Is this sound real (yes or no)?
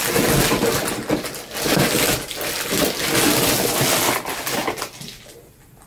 yes